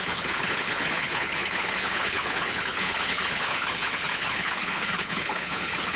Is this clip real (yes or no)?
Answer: no